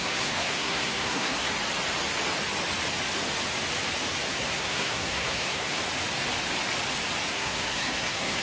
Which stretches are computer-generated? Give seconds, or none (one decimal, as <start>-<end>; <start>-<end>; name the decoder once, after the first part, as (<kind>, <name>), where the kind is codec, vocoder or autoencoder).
0.0-1.5 (codec, SNAC); 4.3-5.8; 7.3-8.4